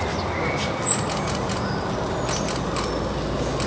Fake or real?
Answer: real